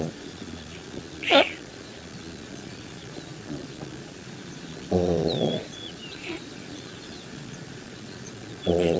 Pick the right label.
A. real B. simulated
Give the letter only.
B